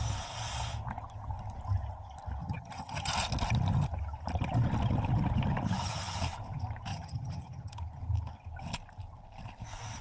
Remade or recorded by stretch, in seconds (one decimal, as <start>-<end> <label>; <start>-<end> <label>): 0.0-2.4 recorded; 2.4-3.1 remade; 3.1-6.9 recorded; 6.9-7.7 remade; 7.7-10.0 recorded